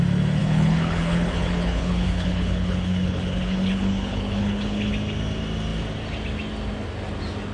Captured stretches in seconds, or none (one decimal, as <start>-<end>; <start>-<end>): 0.0-0.4; 4.9-7.5